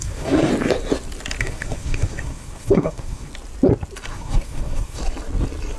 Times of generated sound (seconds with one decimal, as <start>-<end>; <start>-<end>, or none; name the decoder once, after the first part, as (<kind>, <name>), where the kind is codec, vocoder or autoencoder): 0.0-0.5 (codec, SNAC); 1.4-3.3; 4.1-5.0